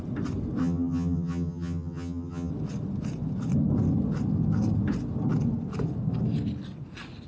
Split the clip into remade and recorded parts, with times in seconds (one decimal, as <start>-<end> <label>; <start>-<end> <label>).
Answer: 0.0-0.6 recorded; 0.6-2.5 remade; 2.5-7.3 recorded